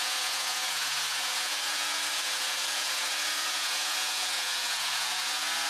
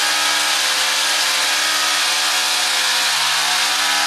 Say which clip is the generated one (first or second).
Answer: first